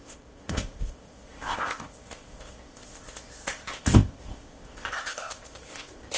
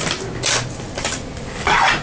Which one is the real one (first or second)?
second